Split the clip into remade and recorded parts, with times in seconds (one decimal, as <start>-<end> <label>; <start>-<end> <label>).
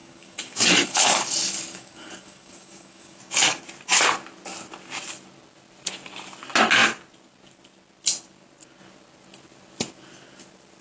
0.0-3.6 remade; 3.6-10.8 recorded